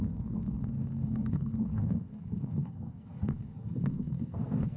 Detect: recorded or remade remade